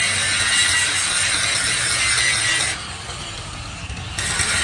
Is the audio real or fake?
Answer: real